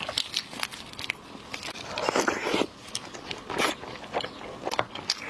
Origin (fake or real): real